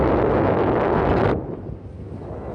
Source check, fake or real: real